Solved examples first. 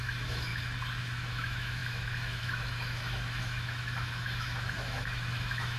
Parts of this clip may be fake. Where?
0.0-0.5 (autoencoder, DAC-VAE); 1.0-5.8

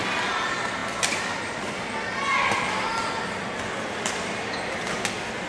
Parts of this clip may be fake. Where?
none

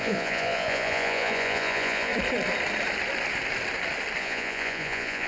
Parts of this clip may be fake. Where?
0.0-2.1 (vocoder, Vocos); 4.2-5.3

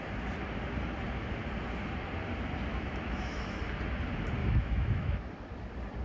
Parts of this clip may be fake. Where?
2.7-3.6 (autoencoder, DAC-VAE); 4.4-5.3